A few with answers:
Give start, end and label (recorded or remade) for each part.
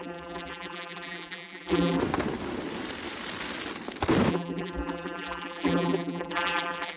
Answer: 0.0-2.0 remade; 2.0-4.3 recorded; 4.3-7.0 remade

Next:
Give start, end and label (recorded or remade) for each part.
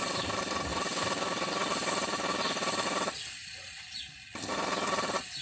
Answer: 0.0-0.7 recorded; 0.7-1.5 remade; 1.5-5.4 recorded